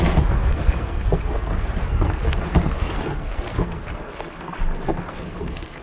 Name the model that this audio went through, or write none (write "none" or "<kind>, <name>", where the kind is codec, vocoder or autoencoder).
codec, SNAC